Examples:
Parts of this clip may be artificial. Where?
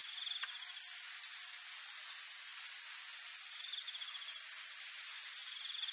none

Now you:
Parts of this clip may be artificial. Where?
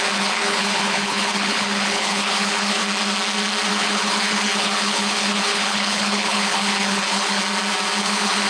0.0-2.8 (codec, HILCodec); 3.7-7.4; 8.0-8.5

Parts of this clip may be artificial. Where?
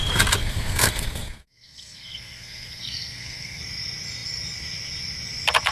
0.4-3.6 (codec, SNAC)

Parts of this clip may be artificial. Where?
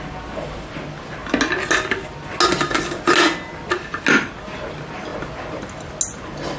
none